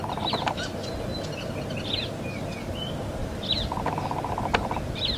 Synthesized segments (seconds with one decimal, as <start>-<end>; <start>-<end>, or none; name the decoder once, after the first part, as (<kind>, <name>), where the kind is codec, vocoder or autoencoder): 3.2-3.9 (vocoder, BigVGAN v2)